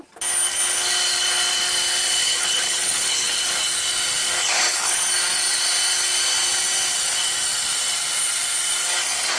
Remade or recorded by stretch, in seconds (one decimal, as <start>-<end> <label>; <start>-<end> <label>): 0.0-2.2 recorded; 2.2-3.4 remade; 3.4-4.4 recorded; 4.4-5.0 remade; 5.0-9.4 recorded